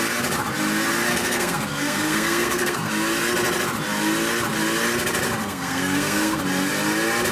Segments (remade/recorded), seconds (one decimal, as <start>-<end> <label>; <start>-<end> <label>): 0.0-1.1 recorded; 1.1-2.9 remade; 2.9-5.4 recorded; 5.4-6.4 remade; 6.4-7.3 recorded